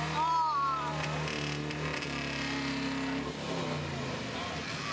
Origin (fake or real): real